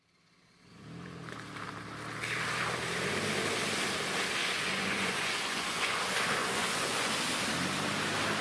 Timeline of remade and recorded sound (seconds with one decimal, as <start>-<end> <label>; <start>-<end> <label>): 0.0-4.4 recorded; 4.4-6.0 remade; 6.0-6.4 recorded; 6.4-7.1 remade; 7.1-8.4 recorded